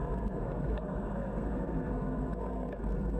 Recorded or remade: remade